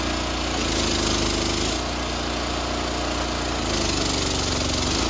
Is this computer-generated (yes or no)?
no